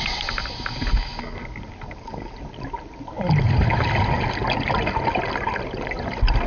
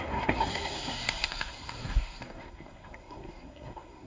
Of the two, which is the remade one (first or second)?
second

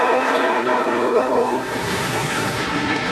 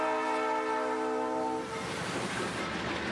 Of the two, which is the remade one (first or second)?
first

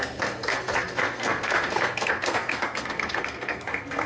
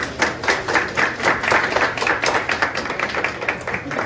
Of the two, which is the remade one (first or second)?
first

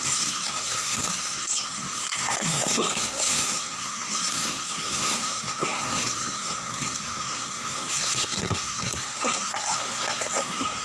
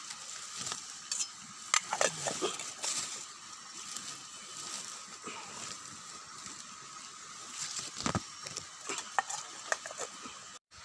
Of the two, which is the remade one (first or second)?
first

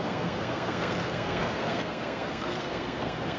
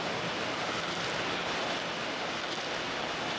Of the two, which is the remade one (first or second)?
first